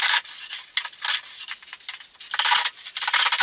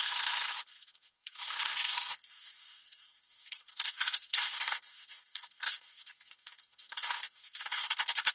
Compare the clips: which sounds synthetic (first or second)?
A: second